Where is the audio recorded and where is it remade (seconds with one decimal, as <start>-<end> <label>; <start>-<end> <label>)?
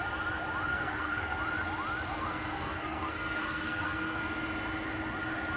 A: 0.0-0.7 recorded; 0.7-1.4 remade; 1.4-2.1 recorded; 2.1-4.2 remade; 4.2-5.6 recorded